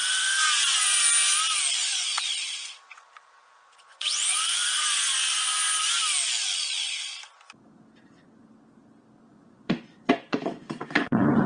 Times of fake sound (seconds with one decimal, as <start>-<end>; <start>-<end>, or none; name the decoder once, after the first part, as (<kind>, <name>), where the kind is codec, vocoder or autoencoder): 0.0-1.0 (vocoder, Vocos); 1.8-6.0; 9.3-11.5